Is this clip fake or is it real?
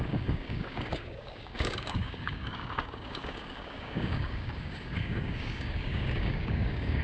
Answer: fake